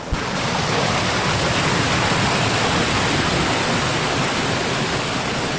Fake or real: real